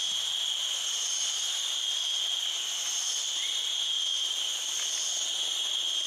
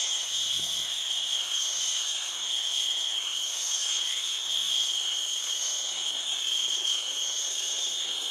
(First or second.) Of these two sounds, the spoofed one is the second